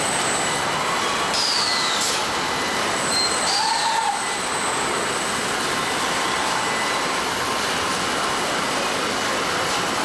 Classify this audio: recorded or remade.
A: recorded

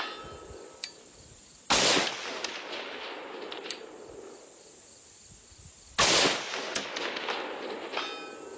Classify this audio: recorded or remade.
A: recorded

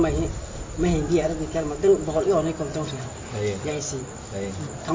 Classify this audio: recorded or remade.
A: recorded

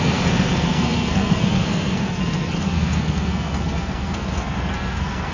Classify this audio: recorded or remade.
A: remade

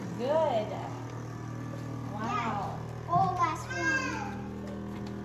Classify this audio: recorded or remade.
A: recorded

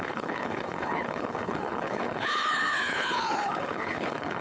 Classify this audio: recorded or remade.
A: remade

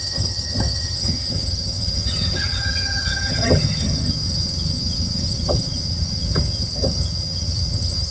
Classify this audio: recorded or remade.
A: remade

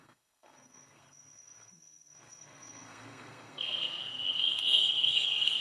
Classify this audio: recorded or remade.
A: remade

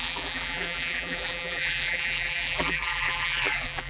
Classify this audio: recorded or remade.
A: remade